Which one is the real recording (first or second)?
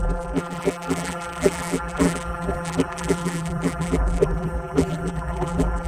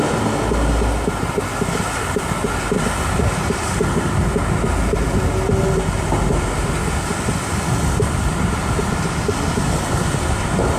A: second